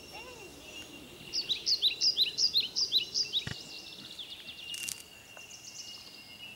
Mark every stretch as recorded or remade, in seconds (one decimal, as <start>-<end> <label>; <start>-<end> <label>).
0.0-2.3 recorded; 2.3-3.0 remade; 3.0-6.6 recorded